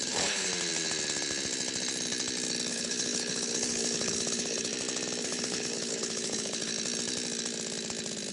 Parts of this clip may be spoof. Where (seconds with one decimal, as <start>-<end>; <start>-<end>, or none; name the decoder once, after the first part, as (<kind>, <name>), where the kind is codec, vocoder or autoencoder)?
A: 0.0-0.5 (codec, HILCodec); 2.7-4.7; 5.2-6.7